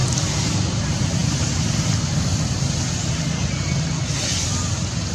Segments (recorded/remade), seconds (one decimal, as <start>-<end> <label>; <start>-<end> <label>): 0.0-5.1 recorded